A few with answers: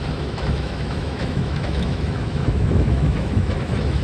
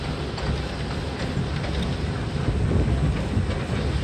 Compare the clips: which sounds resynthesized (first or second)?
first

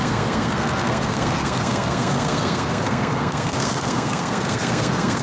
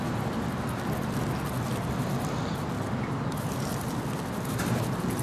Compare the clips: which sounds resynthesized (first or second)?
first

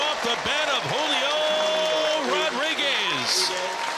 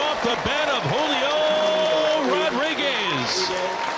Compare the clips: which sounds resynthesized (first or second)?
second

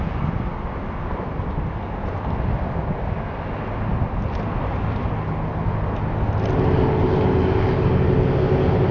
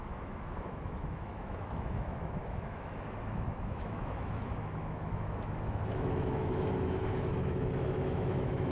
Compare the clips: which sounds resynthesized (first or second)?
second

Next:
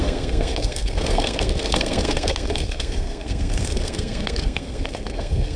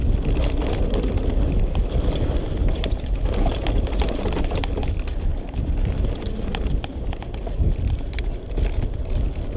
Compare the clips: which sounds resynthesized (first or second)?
first